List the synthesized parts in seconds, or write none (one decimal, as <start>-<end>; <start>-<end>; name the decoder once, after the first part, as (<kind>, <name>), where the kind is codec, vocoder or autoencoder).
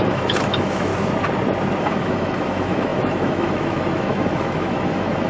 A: 0.0-0.9 (autoencoder, DAC-VAE); 1.8-5.3